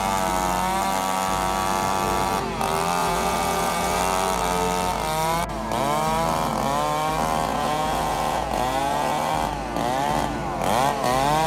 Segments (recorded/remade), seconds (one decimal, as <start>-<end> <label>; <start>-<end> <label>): 0.0-3.0 recorded; 3.0-4.0 remade; 4.0-7.5 recorded; 7.5-9.3 remade; 9.3-11.5 recorded